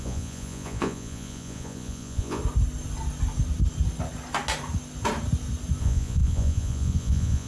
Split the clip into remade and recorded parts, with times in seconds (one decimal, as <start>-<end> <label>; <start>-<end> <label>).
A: 0.0-2.4 remade; 2.4-5.8 recorded; 5.8-7.5 remade